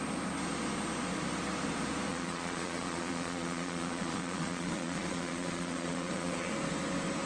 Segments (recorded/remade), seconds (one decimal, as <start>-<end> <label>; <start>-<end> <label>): 0.0-2.1 recorded; 2.1-6.5 remade; 6.5-7.3 recorded

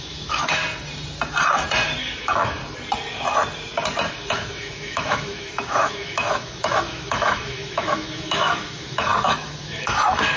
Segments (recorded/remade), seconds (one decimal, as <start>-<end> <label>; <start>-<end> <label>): 0.0-0.6 remade; 0.6-2.0 recorded; 2.0-2.6 remade; 2.6-4.1 recorded; 4.1-10.4 remade

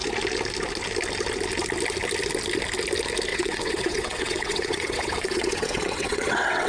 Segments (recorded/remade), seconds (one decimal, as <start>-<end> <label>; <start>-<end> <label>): 0.0-3.3 recorded; 3.3-6.7 remade

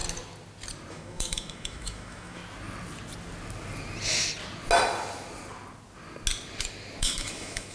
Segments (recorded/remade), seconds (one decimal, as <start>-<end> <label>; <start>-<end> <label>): 0.0-0.9 recorded; 0.9-2.4 remade; 2.4-7.0 recorded; 7.0-7.7 remade

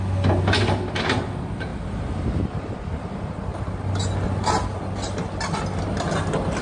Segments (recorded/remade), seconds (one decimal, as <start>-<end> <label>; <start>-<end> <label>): 0.0-1.7 recorded; 1.7-2.7 remade; 2.7-6.6 recorded

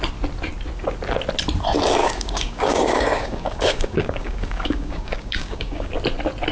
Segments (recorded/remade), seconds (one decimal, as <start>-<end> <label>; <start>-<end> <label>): 0.0-2.0 recorded; 2.0-5.9 remade; 5.9-6.5 recorded

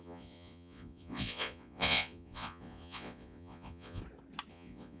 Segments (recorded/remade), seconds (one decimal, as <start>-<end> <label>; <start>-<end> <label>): 0.0-4.0 remade; 4.0-4.5 recorded; 4.5-5.0 remade

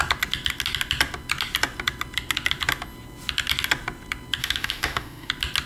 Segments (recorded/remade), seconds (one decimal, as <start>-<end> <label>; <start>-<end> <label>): 0.0-4.4 recorded; 4.4-5.3 remade; 5.3-5.7 recorded